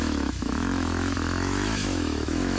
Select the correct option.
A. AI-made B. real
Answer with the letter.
A